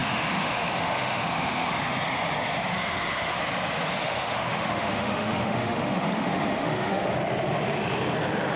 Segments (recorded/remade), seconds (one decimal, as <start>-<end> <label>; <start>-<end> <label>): 0.0-1.8 remade; 1.8-2.7 recorded; 2.7-3.4 remade; 3.4-4.0 recorded; 4.0-7.1 remade; 7.1-8.6 recorded